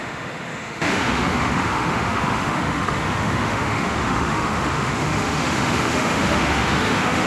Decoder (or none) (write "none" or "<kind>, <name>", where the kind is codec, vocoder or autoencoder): autoencoder, DAC-VAE